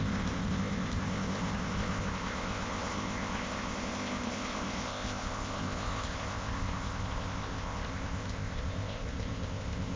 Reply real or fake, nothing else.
fake